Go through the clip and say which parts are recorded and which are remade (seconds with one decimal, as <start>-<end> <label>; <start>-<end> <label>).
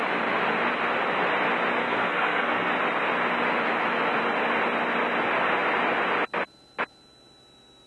0.0-1.8 recorded; 1.8-2.7 remade; 2.7-7.9 recorded